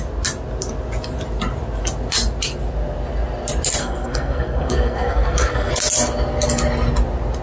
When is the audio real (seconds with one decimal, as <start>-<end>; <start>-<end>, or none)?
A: 0.0-3.8; 5.7-7.4